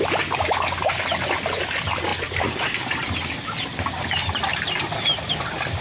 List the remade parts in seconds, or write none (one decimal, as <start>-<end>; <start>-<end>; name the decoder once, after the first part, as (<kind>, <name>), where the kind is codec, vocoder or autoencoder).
none